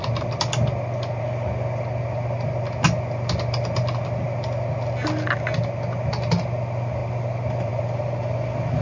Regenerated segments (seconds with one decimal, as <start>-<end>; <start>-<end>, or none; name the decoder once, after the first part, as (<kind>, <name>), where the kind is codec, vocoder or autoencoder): 7.0-8.1 (vocoder, BigVGAN v2)